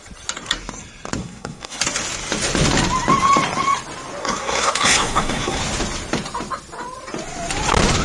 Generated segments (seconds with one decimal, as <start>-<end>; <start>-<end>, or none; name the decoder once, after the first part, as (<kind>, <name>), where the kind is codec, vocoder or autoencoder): 1.2-1.8 (codec, SNAC); 4.2-5.6